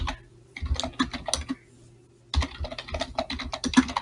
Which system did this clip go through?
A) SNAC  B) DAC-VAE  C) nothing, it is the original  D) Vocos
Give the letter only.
C